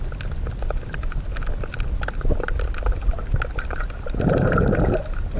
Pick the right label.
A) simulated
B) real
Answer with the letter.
B